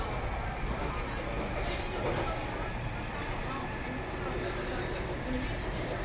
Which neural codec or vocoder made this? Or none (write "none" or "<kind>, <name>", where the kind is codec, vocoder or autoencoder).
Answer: none